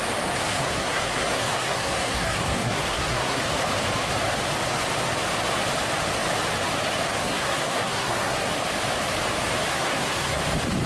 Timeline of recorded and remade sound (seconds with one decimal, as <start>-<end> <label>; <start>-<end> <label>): 0.0-0.5 recorded; 0.5-3.4 remade; 3.4-7.2 recorded; 7.2-8.5 remade; 8.5-9.7 recorded; 9.7-10.4 remade; 10.4-10.9 recorded